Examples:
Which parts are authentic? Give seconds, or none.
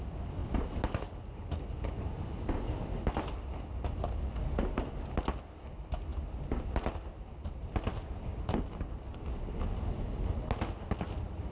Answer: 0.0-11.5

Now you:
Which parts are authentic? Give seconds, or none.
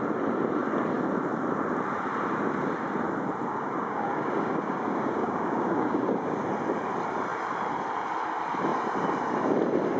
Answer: 0.0-3.5; 6.4-10.0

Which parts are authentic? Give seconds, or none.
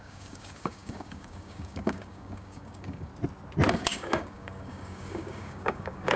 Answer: 3.1-3.7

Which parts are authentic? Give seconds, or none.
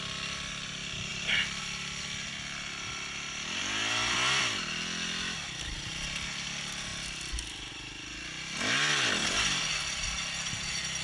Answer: 0.0-11.0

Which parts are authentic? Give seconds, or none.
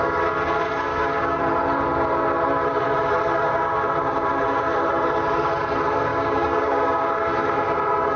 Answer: 0.0-0.9; 1.4-6.1; 7.1-8.2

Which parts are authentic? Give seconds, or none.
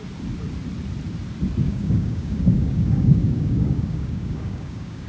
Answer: 0.0-1.6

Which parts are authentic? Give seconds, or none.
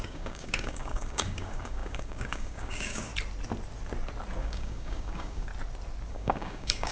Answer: 3.1-4.4; 5.5-6.1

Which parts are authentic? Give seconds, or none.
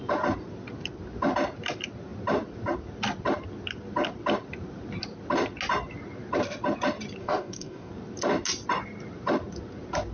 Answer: 0.0-7.2; 7.9-10.1